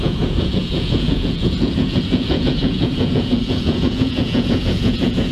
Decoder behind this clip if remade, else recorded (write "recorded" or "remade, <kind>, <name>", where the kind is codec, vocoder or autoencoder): remade, vocoder, Vocos